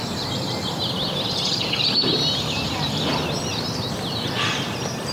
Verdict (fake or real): real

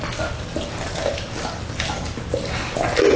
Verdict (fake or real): real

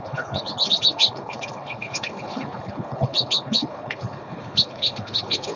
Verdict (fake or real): fake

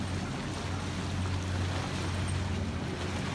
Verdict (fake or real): real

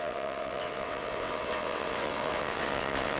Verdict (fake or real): fake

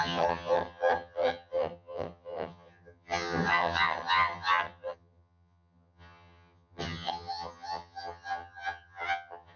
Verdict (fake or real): fake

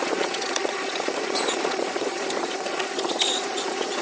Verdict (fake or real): fake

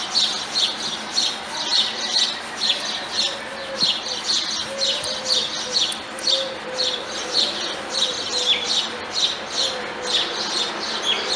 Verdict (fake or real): real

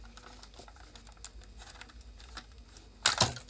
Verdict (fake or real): real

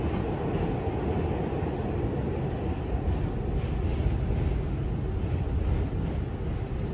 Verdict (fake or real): real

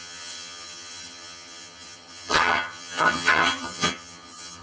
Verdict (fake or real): fake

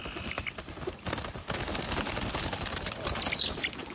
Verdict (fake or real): real